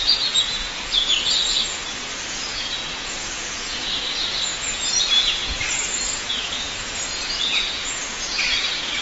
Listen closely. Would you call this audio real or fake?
fake